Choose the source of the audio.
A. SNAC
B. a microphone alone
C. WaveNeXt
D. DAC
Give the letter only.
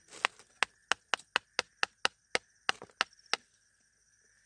B